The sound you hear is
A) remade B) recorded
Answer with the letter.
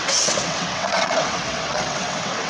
A